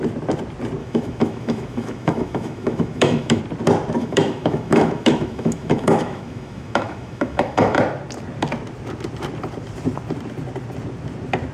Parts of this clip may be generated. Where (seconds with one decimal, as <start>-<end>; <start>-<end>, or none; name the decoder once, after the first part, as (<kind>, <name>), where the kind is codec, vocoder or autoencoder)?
0.8-3.4 (autoencoder, DAC-VAE); 4.0-7.8